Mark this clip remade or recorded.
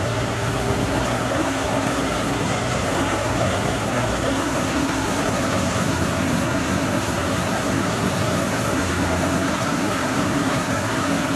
remade